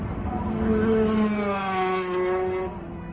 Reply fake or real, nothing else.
real